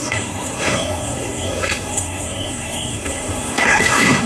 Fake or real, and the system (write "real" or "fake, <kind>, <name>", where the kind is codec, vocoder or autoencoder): fake, codec, SNAC